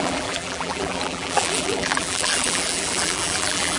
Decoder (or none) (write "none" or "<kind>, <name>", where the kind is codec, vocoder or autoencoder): vocoder, BigVGAN v2